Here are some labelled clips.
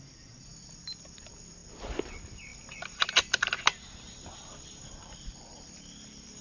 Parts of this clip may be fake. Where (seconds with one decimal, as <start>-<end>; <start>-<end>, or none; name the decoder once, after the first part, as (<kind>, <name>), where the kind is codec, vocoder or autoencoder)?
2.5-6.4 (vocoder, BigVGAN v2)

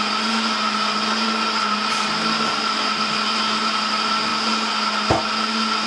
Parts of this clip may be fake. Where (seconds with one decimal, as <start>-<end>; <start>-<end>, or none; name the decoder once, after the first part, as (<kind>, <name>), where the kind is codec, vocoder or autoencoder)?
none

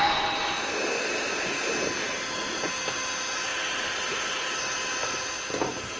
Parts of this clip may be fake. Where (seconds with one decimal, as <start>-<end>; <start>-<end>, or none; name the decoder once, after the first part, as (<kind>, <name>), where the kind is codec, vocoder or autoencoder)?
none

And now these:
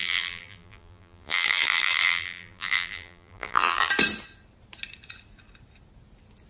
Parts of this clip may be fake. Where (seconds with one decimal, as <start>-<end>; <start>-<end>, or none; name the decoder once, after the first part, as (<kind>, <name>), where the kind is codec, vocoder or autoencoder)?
0.0-3.9 (vocoder, BigVGAN v2)